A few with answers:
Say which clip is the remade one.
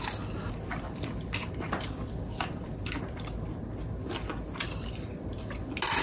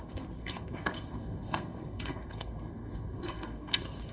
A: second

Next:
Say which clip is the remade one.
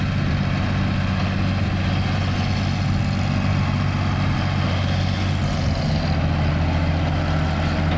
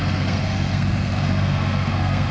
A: second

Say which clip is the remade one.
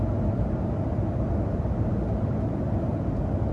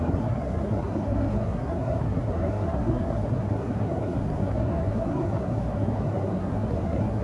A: second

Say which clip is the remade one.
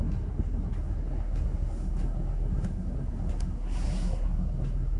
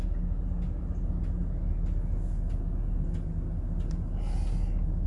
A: first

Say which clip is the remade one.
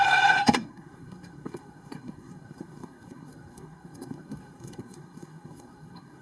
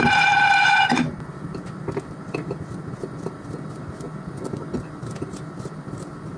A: first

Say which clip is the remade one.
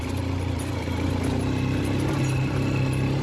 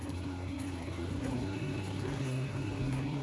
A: second